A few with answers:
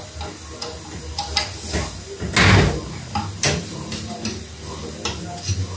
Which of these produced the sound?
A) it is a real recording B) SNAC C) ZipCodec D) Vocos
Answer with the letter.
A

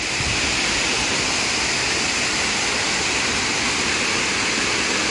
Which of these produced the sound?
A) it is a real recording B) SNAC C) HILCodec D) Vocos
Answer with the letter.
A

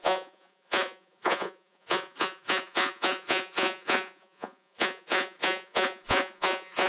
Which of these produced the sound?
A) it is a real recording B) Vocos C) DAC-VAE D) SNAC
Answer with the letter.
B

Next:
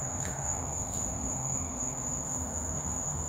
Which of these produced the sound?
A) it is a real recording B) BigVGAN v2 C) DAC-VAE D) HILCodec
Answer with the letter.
C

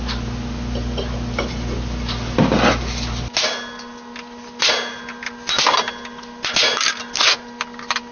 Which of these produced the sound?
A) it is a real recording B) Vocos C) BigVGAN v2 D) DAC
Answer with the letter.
A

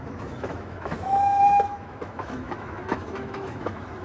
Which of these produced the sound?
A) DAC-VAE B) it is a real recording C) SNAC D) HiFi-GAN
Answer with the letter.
A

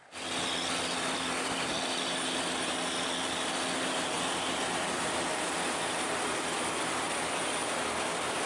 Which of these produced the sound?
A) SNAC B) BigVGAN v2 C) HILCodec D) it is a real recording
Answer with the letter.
D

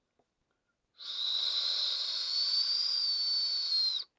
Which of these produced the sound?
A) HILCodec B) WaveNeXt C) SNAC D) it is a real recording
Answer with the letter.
D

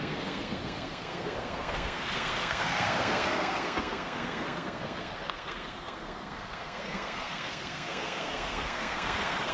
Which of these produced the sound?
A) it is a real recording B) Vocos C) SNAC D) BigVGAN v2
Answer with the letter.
C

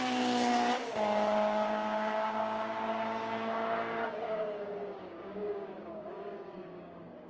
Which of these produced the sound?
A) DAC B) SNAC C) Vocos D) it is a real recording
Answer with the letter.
A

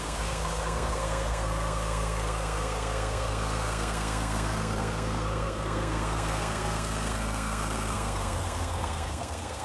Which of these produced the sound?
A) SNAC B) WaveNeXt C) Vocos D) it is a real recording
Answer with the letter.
A